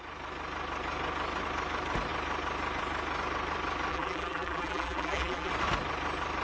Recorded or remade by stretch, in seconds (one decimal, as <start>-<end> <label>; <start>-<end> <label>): 0.0-3.9 recorded; 3.9-5.5 remade; 5.5-6.4 recorded